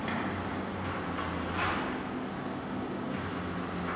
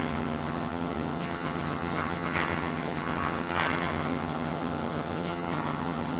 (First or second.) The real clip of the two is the first